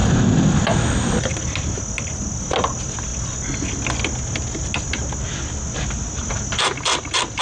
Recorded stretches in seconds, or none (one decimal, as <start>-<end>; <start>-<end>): 0.0-7.4